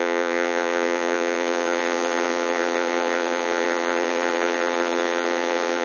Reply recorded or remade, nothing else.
remade